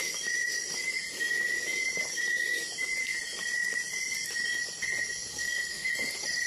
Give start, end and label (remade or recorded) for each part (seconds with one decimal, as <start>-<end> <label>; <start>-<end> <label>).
0.0-5.3 recorded; 5.3-5.9 remade; 5.9-6.5 recorded